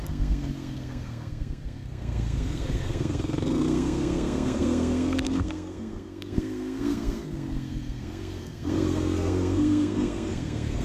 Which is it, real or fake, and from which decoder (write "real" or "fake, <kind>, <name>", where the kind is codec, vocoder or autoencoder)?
fake, codec, SNAC